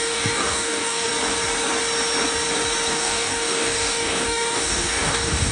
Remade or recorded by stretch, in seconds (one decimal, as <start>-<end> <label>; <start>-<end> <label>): 0.0-1.1 remade; 1.1-2.9 recorded; 2.9-5.5 remade